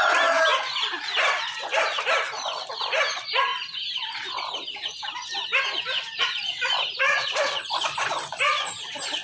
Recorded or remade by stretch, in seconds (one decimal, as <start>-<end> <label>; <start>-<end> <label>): 0.0-3.5 remade; 3.5-5.6 recorded; 5.6-9.2 remade